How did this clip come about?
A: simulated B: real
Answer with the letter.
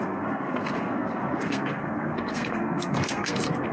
A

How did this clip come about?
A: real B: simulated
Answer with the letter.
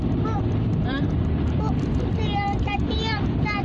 A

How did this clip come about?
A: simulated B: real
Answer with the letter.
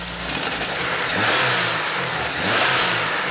B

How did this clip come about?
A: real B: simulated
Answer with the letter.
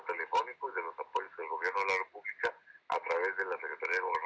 A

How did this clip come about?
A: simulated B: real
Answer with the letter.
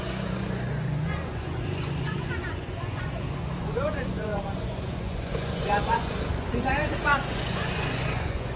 A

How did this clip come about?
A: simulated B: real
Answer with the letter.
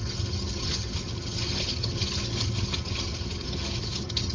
A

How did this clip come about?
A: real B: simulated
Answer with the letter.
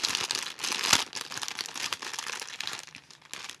A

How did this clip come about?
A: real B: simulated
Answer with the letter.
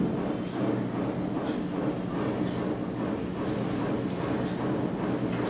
A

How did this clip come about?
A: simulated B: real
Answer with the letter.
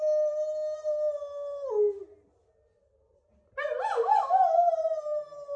B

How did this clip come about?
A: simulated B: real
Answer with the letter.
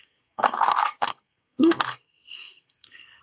A